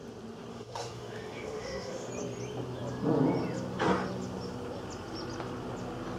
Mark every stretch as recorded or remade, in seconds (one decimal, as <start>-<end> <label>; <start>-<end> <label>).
0.0-0.5 recorded; 0.5-2.1 remade; 2.1-6.2 recorded